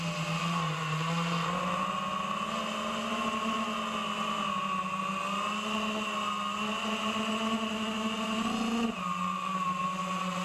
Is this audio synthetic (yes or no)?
no